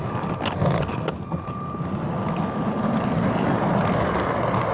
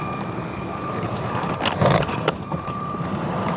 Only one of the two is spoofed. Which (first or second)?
second